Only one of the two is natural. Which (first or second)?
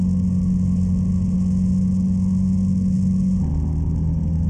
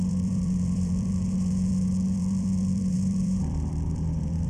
first